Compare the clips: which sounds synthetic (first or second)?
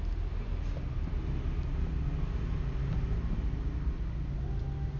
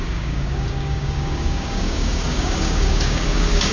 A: second